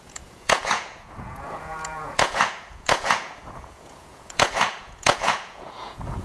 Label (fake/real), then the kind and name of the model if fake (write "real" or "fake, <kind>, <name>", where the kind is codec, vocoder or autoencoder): fake, vocoder, Vocos